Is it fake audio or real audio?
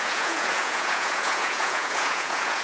fake